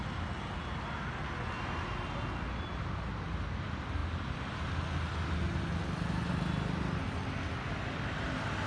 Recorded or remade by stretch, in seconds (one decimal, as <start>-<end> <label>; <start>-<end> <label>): 0.0-8.7 recorded